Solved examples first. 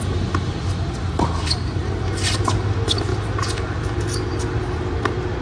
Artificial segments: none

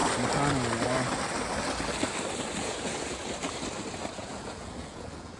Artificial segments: 2.6-3.2; 4.2-5.4

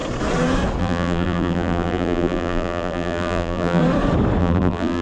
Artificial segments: 0.8-3.8; 4.4-5.0

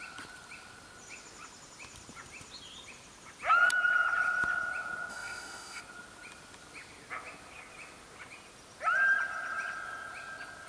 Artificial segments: 5.1-5.8

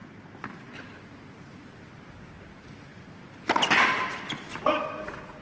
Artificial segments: none

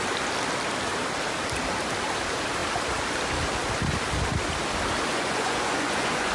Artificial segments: 5.1-6.3

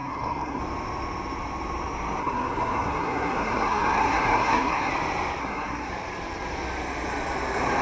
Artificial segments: 0.0-0.6; 2.2-4.9; 5.4-5.9